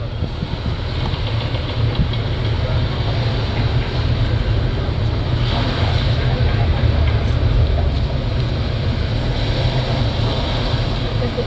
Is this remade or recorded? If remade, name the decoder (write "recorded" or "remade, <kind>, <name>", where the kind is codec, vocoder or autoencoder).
recorded